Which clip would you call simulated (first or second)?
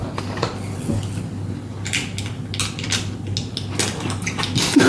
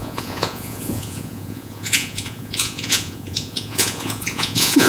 second